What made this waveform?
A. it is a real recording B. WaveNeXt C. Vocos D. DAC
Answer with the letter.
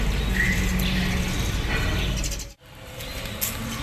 A